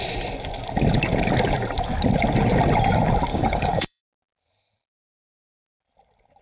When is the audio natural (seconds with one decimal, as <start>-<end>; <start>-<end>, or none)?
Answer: 0.0-3.3; 4.0-6.4